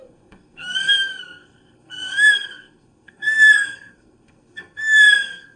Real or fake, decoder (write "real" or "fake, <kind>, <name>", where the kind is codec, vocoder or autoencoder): fake, codec, SNAC